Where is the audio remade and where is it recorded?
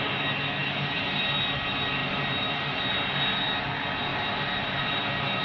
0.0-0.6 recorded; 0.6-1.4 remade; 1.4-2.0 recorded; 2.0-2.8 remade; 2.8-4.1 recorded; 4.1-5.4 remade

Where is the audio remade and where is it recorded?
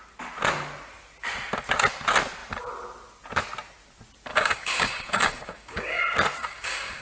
0.0-4.3 recorded; 4.3-6.0 remade; 6.0-6.4 recorded; 6.4-7.0 remade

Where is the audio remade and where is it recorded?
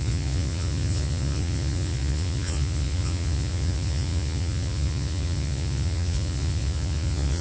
0.0-7.4 remade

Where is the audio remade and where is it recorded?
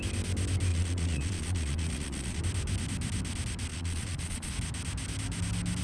0.0-0.7 recorded; 0.7-2.4 remade; 2.4-3.7 recorded; 3.7-4.5 remade; 4.5-5.8 recorded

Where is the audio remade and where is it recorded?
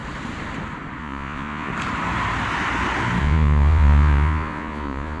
0.0-1.0 recorded; 1.0-1.7 remade; 1.7-3.2 recorded; 3.2-5.2 remade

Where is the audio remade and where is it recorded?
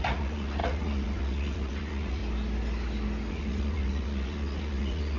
0.0-2.2 remade; 2.2-3.3 recorded; 3.3-5.2 remade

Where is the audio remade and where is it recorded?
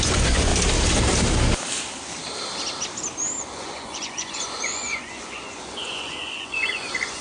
0.0-0.5 remade; 0.5-3.4 recorded; 3.4-7.2 remade